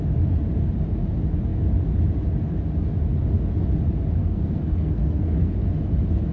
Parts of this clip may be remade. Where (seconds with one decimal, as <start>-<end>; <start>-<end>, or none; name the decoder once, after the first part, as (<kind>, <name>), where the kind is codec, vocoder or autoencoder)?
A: 4.2-5.5 (codec, SNAC)